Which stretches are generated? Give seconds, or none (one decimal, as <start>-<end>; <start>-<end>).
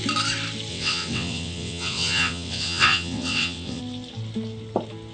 0.7-3.8